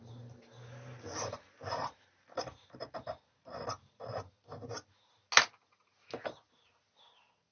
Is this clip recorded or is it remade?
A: recorded